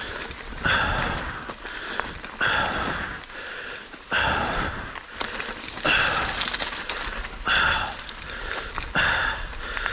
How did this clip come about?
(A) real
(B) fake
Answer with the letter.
A